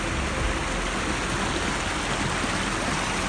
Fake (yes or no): no